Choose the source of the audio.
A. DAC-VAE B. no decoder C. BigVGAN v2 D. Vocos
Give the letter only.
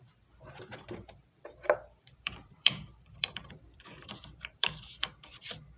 C